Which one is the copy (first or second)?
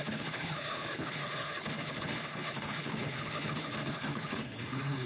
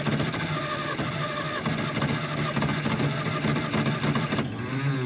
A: first